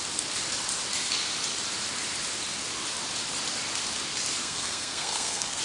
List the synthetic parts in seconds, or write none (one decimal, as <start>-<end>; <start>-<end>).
4.4-5.6